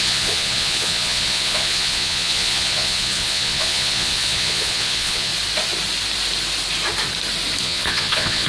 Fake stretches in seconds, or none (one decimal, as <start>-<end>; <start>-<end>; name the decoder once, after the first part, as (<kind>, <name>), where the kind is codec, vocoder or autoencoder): 0.0-5.3 (vocoder, Vocos); 7.6-8.5